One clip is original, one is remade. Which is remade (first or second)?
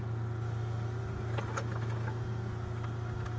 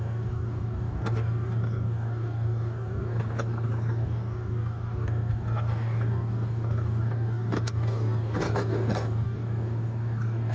second